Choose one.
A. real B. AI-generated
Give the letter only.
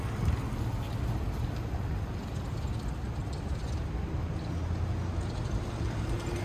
A